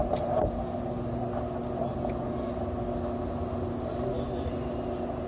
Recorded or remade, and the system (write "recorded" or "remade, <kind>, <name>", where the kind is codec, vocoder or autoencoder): recorded